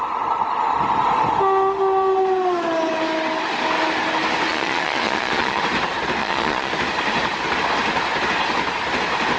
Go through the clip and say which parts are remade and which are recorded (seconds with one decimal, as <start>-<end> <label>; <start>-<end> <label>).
0.0-4.5 recorded; 4.5-5.6 remade; 5.6-6.2 recorded; 6.2-6.7 remade; 6.7-9.4 recorded